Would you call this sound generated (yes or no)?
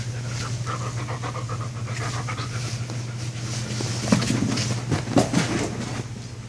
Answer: no